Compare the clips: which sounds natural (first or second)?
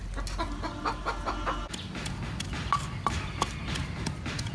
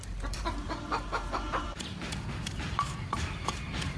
first